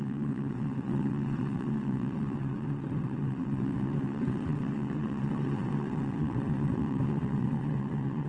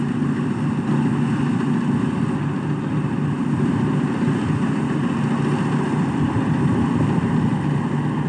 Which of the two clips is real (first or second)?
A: second